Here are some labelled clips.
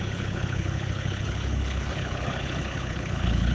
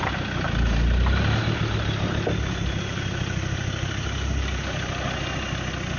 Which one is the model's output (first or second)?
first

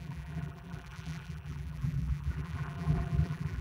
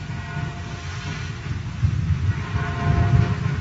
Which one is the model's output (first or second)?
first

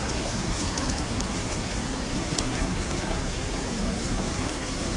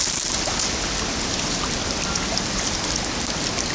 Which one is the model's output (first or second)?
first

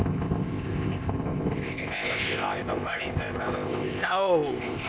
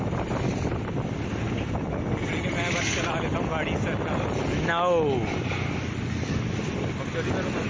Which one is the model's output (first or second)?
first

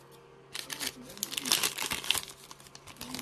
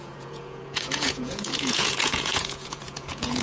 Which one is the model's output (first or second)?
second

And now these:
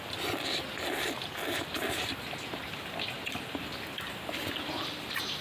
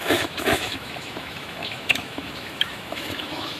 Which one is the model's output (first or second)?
second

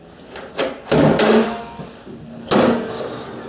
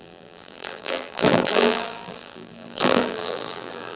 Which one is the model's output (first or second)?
second